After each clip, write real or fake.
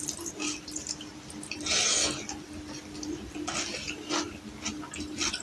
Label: real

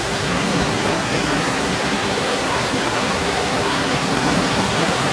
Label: fake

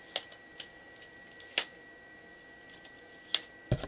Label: real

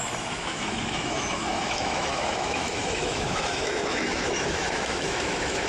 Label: fake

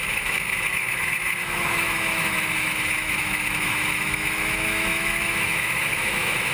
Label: fake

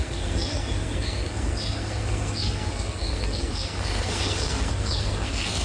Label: fake